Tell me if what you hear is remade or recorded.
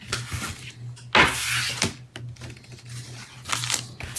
recorded